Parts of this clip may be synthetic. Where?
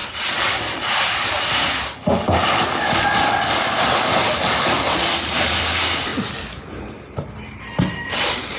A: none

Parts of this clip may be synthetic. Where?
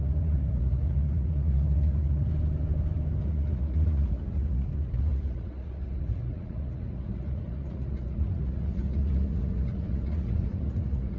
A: 0.0-2.3 (vocoder, Vocos); 3.2-11.2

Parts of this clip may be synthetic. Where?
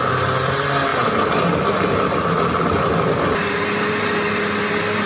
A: none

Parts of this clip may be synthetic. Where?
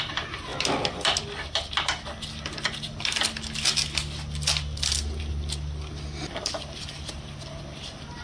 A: none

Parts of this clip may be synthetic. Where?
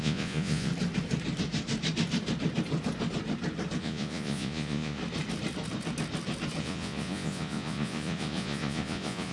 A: 0.0-0.7 (vocoder, Vocos); 3.8-5.0; 6.6-9.3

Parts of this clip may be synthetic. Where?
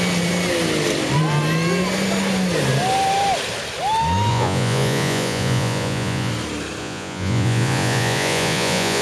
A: 4.3-6.3 (vocoder, Vocos); 6.8-9.0